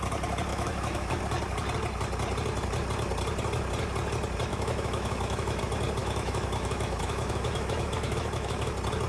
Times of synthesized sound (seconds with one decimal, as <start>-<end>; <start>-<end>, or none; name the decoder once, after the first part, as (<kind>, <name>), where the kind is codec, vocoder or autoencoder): 0.5-1.2 (autoencoder, DAC-VAE); 4.5-5.6; 6.0-8.7